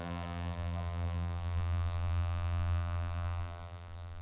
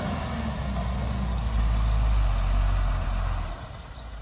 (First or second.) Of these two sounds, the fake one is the first